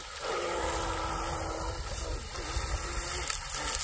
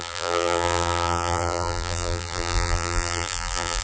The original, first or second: first